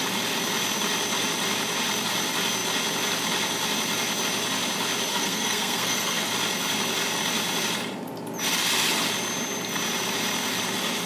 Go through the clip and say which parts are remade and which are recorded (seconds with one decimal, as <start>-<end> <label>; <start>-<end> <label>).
0.0-5.1 recorded; 5.1-6.3 remade; 6.3-11.1 recorded